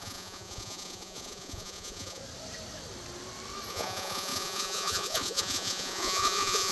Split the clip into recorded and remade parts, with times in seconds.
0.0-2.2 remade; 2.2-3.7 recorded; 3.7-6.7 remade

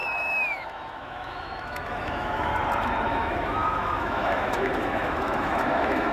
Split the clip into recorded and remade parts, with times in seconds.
0.0-2.5 remade; 2.5-3.1 recorded; 3.1-6.1 remade

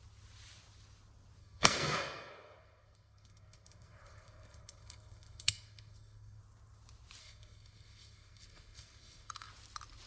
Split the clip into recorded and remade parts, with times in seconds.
0.0-1.4 recorded; 1.4-6.4 remade; 6.4-7.2 recorded; 7.2-9.5 remade; 9.5-10.1 recorded

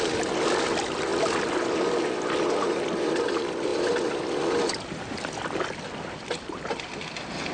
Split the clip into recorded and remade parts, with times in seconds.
0.0-7.5 recorded

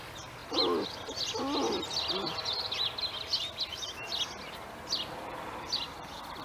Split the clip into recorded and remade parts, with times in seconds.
0.0-6.4 recorded

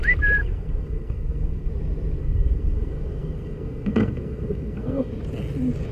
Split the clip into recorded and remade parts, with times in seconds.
0.0-0.4 recorded; 0.4-1.7 remade; 1.7-2.2 recorded; 2.2-5.1 remade; 5.1-5.9 recorded